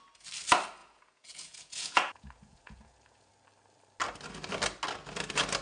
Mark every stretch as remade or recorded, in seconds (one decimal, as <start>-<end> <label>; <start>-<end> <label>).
0.0-0.8 recorded; 0.8-3.3 remade; 3.3-5.6 recorded